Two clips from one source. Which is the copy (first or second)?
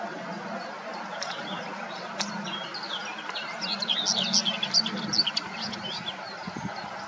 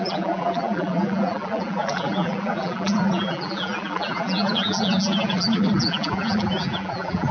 second